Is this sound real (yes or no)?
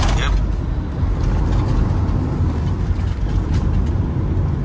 yes